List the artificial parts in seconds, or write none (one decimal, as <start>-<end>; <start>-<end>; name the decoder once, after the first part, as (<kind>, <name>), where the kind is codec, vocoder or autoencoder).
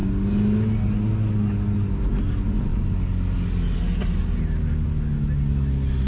2.0-2.7 (vocoder, BigVGAN v2)